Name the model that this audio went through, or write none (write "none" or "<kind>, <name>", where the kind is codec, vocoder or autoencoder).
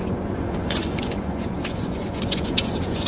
vocoder, Vocos